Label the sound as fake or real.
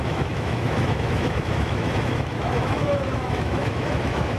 fake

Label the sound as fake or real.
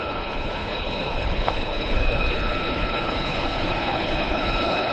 fake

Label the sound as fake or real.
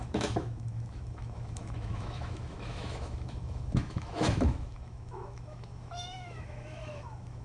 fake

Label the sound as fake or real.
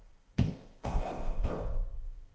fake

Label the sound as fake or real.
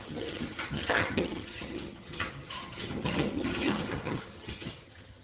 fake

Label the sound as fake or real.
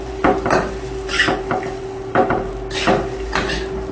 real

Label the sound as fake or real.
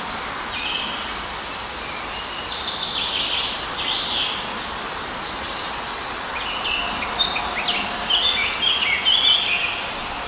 real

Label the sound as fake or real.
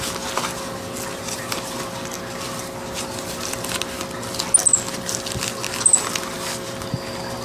real